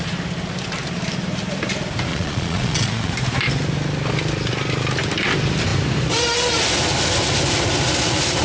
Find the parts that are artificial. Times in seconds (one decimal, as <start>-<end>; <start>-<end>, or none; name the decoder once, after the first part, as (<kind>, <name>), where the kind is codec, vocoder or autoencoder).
2.1-3.1 (vocoder, Vocos)